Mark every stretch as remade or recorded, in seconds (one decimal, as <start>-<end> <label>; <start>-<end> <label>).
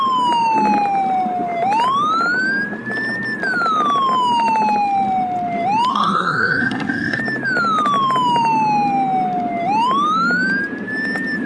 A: 0.0-5.9 recorded; 5.9-7.2 remade; 7.2-11.5 recorded